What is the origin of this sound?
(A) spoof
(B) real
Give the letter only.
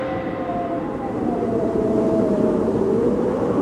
A